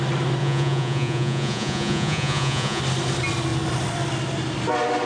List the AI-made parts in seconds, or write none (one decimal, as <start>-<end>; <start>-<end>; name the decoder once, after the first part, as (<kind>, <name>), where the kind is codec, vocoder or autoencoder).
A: 0.4-2.8 (vocoder, Vocos)